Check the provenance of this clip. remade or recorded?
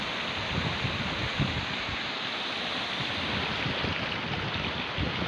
recorded